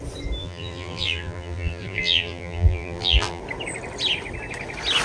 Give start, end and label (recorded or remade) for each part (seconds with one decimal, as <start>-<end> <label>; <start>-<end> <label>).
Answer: 0.0-0.4 recorded; 0.4-3.4 remade; 3.4-5.0 recorded